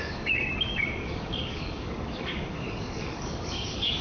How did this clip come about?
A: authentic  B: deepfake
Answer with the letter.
B